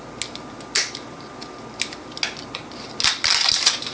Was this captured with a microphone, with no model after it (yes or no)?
yes